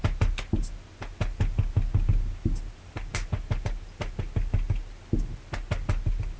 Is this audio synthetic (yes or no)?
no